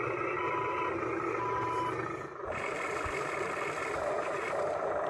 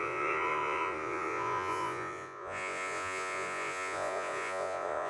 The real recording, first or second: first